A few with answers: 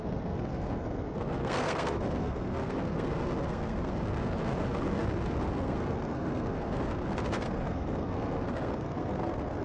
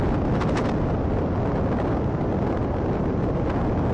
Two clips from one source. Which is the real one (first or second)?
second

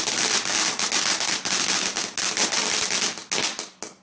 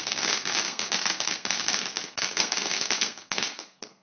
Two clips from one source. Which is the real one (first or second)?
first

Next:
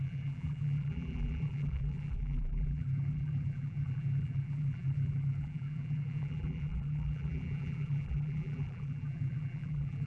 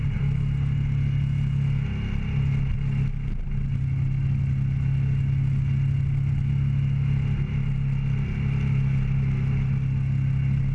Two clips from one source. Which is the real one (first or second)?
second